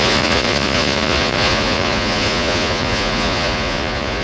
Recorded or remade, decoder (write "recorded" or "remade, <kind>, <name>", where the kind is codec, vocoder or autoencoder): remade, vocoder, Vocos